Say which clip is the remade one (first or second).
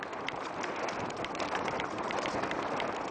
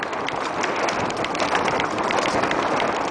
first